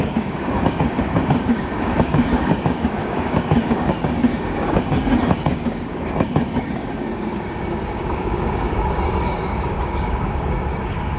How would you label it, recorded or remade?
remade